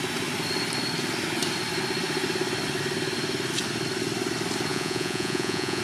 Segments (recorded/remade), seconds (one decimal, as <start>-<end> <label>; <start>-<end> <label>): 0.0-4.7 recorded; 4.7-5.8 remade